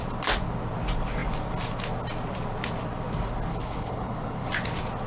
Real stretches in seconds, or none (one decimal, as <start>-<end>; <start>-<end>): 0.0-3.5; 4.5-5.1